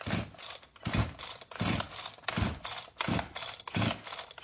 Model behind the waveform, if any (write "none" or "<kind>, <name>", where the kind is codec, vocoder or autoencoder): none